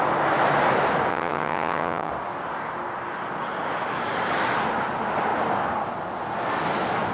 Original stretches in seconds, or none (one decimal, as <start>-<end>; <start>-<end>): 0.0-1.1; 2.1-7.1